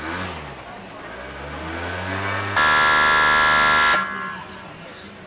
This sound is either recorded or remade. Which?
recorded